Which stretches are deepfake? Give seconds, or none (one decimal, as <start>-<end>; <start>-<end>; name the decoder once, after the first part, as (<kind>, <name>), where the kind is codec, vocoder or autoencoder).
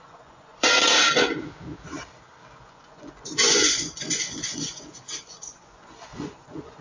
0.0-0.8 (vocoder, Vocos); 2.6-6.8